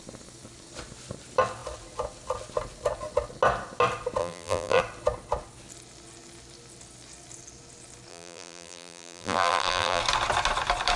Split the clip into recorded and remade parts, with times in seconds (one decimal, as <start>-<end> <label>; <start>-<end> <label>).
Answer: 0.0-4.2 recorded; 4.2-4.8 remade; 4.8-8.1 recorded; 8.1-10.0 remade; 10.0-11.0 recorded